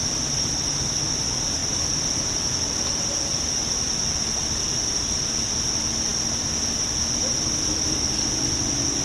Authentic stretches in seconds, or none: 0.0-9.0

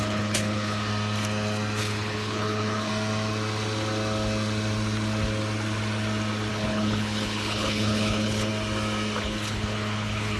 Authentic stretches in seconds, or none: 0.9-1.8; 2.9-6.5; 8.5-9.2

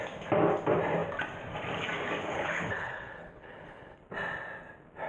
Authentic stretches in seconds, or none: 0.0-2.3; 4.0-5.1